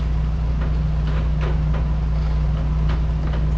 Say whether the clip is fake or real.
real